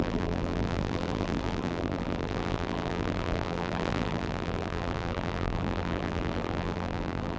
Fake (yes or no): yes